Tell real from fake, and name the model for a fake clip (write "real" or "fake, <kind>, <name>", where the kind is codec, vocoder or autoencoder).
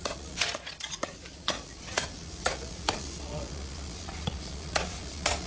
fake, vocoder, Vocos